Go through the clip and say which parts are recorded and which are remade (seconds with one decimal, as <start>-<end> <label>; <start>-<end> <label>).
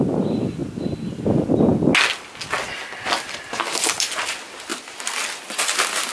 0.0-6.1 recorded